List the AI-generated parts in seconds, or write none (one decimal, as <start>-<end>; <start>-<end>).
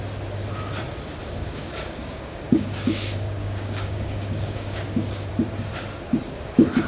1.2-5.3